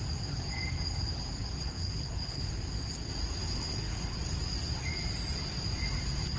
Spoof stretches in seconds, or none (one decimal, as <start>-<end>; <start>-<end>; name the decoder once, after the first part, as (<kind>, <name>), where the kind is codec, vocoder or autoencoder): 1.6-2.5 (codec, HILCodec); 3.4-4.2